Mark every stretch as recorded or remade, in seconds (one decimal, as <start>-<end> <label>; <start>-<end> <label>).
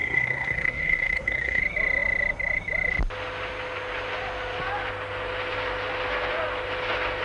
0.0-1.6 remade; 1.6-7.2 recorded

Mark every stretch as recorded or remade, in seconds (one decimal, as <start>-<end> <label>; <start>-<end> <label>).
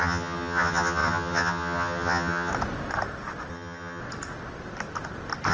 0.0-2.5 remade; 2.5-3.5 recorded; 3.5-4.0 remade; 4.0-5.5 recorded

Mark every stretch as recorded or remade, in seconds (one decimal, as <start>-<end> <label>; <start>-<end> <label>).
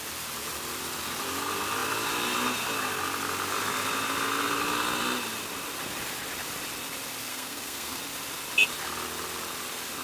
0.0-7.3 recorded; 7.3-8.0 remade; 8.0-10.0 recorded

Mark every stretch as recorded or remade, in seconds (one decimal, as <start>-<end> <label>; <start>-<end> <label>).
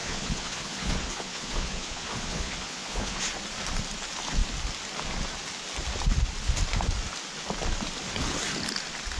0.0-3.2 remade; 3.2-9.2 recorded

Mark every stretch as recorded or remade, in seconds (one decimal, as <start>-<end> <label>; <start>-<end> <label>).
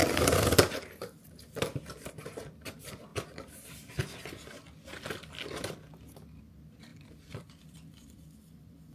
0.0-2.2 recorded; 2.2-3.1 remade; 3.1-6.4 recorded; 6.4-8.9 remade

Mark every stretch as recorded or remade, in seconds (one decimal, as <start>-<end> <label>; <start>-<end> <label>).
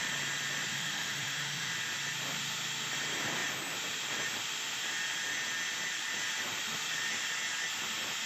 0.0-0.7 recorded; 0.7-1.7 remade; 1.7-8.3 recorded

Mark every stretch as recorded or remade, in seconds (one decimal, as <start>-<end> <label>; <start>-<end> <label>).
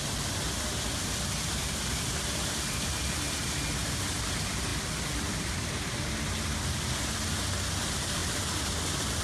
0.0-1.6 recorded; 1.6-3.2 remade; 3.2-4.7 recorded; 4.7-6.1 remade; 6.1-9.2 recorded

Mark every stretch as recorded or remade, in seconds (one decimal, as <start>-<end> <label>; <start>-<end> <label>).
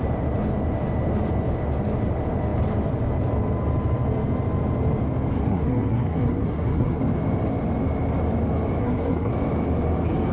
0.0-5.3 recorded; 5.3-7.0 remade; 7.0-8.8 recorded; 8.8-9.3 remade; 9.3-10.3 recorded